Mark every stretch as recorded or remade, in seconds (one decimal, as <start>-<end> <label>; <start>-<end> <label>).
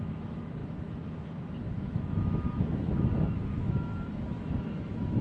0.0-5.2 remade